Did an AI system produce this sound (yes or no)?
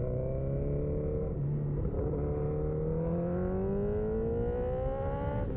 no